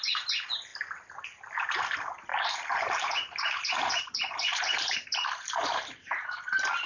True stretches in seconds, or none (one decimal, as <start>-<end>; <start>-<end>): 0.0-2.3; 6.4-6.9